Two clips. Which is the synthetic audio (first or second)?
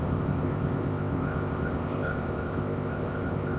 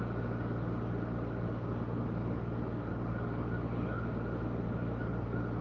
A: first